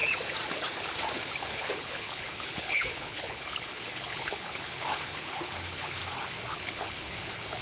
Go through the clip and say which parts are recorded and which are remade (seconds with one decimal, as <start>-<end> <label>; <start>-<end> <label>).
0.0-1.4 recorded; 1.4-6.0 remade; 6.0-6.5 recorded; 6.5-7.6 remade